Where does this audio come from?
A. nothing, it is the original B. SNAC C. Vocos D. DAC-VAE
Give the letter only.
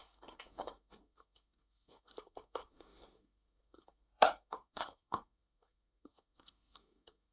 B